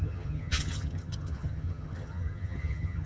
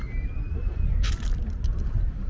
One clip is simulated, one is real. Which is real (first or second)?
second